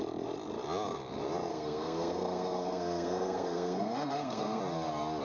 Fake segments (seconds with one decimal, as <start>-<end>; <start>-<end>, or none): 1.5-4.6